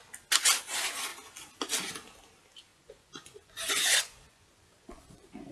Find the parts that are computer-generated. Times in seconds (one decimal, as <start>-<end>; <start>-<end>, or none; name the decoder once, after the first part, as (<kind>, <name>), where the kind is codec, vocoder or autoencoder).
2.7-5.5 (vocoder, Vocos)